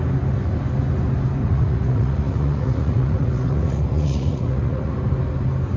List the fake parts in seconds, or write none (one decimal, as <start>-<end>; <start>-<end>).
1.4-4.9